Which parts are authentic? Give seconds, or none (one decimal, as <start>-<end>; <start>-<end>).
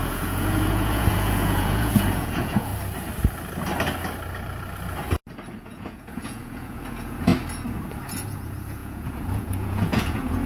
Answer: 2.7-5.6; 7.3-7.9